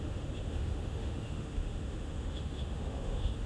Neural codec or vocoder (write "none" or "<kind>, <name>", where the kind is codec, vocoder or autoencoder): autoencoder, DAC-VAE